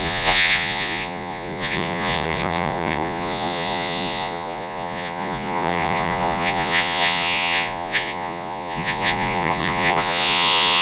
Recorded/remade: remade